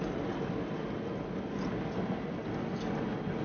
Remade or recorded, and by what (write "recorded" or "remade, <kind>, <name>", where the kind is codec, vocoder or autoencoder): recorded